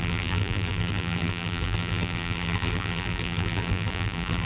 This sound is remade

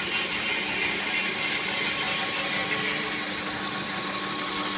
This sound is recorded